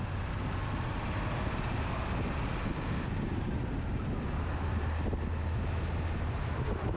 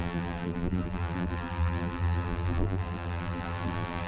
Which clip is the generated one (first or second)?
second